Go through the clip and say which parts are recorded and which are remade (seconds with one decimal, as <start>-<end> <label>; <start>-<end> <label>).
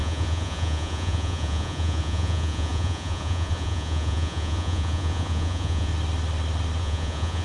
0.0-5.9 remade; 5.9-6.8 recorded; 6.8-7.4 remade